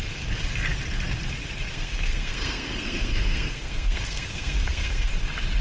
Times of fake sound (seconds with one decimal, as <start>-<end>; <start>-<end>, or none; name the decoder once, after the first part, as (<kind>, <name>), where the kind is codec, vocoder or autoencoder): 1.7-5.1 (codec, SNAC)